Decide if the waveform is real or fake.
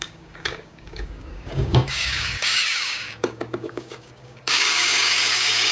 fake